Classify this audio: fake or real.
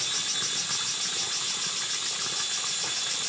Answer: real